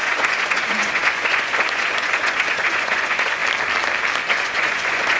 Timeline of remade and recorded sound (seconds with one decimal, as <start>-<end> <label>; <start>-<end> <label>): 0.0-3.4 remade; 3.4-4.2 recorded; 4.2-5.2 remade